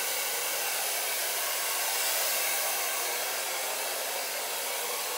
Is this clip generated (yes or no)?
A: no